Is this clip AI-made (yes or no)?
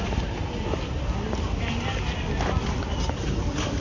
no